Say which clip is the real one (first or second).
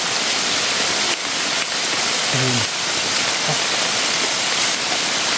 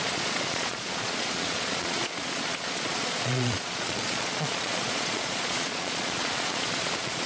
first